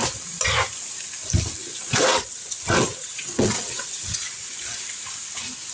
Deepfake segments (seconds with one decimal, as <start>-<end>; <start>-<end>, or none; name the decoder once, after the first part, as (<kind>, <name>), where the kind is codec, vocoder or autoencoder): 1.6-5.0 (vocoder, WaveNeXt)

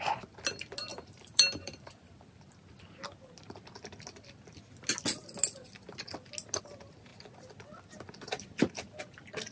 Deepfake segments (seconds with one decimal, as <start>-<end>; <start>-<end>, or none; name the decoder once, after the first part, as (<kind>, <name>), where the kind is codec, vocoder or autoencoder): 0.9-1.9 (vocoder, BigVGAN v2)

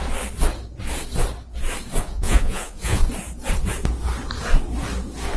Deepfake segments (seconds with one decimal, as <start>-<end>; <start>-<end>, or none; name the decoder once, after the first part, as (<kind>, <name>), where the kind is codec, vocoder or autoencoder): 2.0-3.0 (vocoder, Vocos)

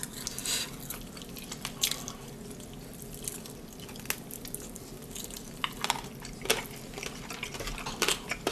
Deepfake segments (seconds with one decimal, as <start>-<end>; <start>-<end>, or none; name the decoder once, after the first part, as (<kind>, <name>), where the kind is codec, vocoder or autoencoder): none

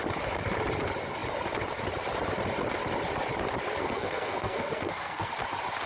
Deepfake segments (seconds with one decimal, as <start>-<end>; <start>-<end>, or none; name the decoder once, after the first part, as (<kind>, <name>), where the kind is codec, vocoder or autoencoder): 3.8-5.3 (codec, SNAC)

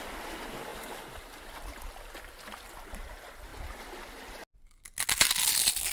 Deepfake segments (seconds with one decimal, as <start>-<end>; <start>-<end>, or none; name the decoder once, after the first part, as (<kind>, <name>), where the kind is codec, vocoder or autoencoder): 0.7-1.8 (vocoder, BigVGAN v2)

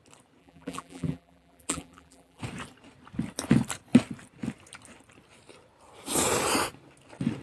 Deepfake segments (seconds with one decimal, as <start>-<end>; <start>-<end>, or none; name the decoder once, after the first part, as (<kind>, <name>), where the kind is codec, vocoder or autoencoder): 0.4-2.4 (vocoder, BigVGAN v2)

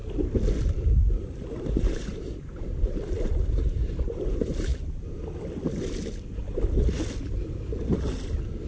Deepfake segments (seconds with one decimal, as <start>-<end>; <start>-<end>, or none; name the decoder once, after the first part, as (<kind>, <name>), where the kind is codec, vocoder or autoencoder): 1.1-4.7 (vocoder, BigVGAN v2)